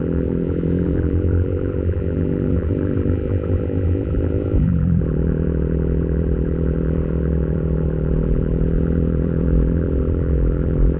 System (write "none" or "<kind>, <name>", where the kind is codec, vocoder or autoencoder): vocoder, BigVGAN v2